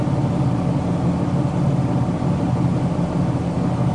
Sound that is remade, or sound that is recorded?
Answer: recorded